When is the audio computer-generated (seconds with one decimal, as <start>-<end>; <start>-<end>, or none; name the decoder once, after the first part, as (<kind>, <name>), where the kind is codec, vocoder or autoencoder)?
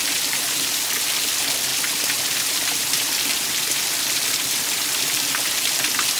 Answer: 1.7-5.3 (vocoder, BigVGAN v2)